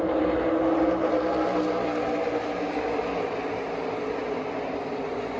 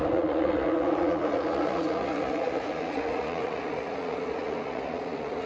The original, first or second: first